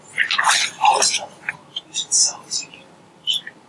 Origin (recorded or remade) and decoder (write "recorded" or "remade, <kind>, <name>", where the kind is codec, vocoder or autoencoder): recorded